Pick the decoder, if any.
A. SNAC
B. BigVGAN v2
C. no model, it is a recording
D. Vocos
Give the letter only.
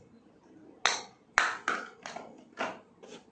C